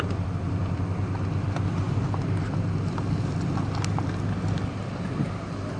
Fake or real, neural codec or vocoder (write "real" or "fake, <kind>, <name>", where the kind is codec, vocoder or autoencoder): real